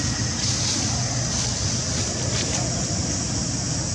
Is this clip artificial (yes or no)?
no